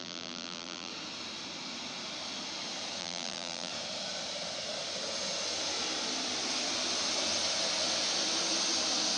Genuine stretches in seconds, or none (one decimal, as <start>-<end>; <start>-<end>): 0.9-3.0; 3.7-9.2